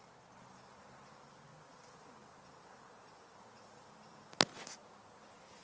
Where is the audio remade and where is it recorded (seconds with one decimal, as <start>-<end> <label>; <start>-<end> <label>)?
0.0-5.6 recorded